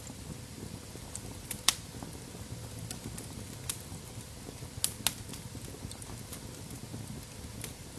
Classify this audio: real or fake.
real